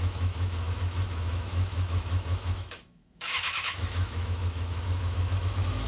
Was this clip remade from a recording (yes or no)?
yes